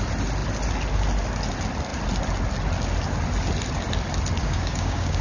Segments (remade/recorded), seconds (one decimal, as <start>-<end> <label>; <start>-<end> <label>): 0.0-4.4 recorded; 4.4-5.2 remade